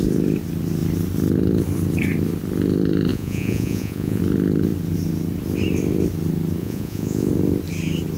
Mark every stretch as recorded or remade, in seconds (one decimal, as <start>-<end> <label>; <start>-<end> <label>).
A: 0.0-3.1 recorded; 3.1-4.2 remade; 4.2-6.6 recorded; 6.6-7.3 remade; 7.3-8.2 recorded